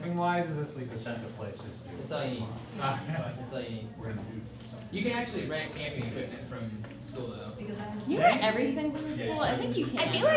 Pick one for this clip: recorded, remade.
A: recorded